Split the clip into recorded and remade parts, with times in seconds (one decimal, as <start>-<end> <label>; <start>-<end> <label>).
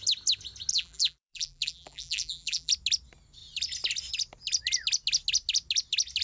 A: 0.0-0.7 recorded; 0.7-2.7 remade; 2.7-6.2 recorded